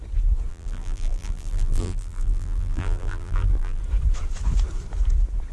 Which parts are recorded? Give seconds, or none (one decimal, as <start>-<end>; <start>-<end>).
0.0-0.5; 3.8-5.5